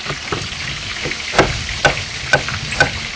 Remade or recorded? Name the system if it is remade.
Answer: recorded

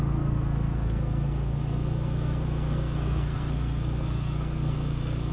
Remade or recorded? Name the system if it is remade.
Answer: remade, codec, SNAC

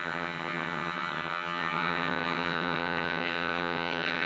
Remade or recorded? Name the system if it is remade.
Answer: remade, vocoder, HiFi-GAN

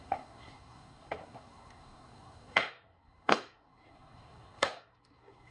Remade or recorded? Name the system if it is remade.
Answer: remade, codec, SNAC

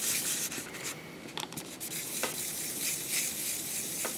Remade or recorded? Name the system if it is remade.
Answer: recorded